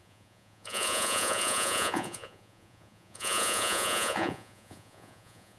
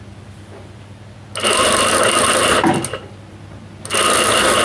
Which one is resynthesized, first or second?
first